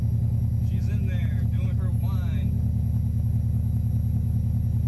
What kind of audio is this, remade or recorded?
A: recorded